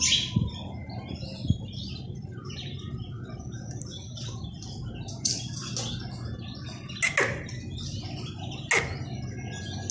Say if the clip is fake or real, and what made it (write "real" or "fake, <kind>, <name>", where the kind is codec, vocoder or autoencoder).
real